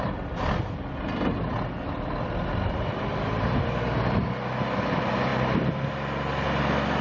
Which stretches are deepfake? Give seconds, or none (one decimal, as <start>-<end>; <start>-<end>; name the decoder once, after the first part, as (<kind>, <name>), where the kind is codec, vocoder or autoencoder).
none